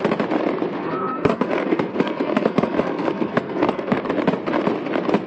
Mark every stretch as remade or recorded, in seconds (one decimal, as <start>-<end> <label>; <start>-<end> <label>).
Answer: 0.0-0.8 recorded; 0.8-4.0 remade; 4.0-5.3 recorded